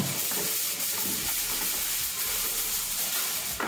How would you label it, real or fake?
real